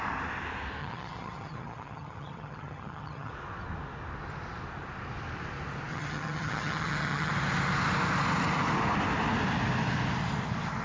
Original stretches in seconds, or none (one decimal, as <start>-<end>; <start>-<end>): 0.0-0.8; 3.3-5.9; 7.3-10.8